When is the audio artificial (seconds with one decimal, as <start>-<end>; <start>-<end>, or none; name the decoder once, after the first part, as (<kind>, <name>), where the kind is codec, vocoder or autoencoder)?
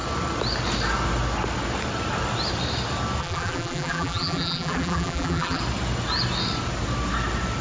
3.2-5.6 (vocoder, BigVGAN v2)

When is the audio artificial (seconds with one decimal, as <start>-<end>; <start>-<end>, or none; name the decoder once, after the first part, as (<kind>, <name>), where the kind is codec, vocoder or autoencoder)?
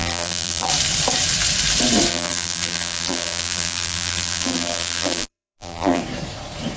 0.0-0.7 (vocoder, BigVGAN v2); 2.1-6.0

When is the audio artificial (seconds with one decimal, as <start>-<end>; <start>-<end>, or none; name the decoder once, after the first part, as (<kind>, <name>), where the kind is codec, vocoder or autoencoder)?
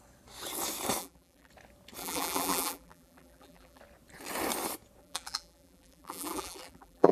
1.0-1.5 (vocoder, BigVGAN v2); 2.0-3.8; 5.0-7.1